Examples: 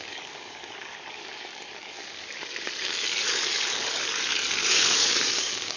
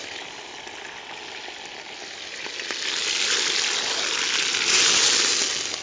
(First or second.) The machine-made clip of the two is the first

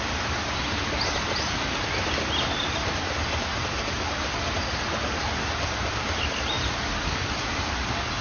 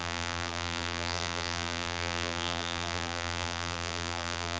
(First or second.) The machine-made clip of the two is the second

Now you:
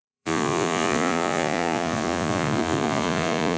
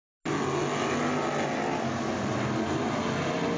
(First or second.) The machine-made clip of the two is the first